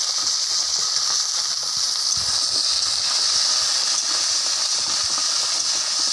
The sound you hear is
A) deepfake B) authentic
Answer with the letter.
B